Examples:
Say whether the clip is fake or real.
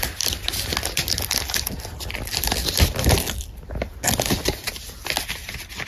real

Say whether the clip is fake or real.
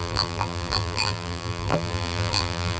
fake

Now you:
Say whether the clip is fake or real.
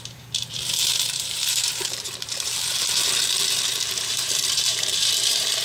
fake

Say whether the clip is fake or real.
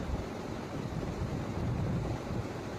fake